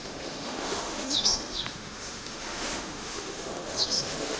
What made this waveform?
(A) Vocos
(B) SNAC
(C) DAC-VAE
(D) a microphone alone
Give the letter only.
C